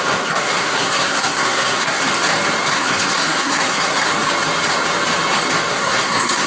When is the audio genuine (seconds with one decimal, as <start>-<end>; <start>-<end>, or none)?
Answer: 2.0-2.7; 4.1-5.7